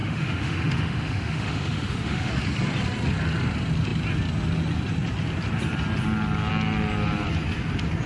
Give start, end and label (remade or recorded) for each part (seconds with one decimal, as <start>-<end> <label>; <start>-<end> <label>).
0.0-2.3 remade; 2.3-8.1 recorded